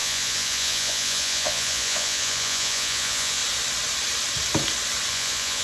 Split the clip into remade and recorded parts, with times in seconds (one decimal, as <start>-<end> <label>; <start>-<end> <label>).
0.0-3.4 remade; 3.4-5.1 recorded; 5.1-5.6 remade